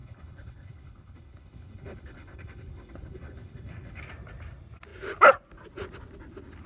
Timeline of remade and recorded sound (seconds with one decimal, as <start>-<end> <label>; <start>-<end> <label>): 0.0-4.0 remade; 4.0-6.7 recorded